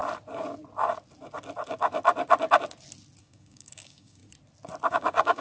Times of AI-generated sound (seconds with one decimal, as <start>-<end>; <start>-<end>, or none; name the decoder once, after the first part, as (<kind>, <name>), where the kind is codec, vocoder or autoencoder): 3.2-4.2 (codec, DAC); 4.9-5.4